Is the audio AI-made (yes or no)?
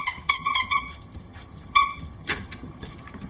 yes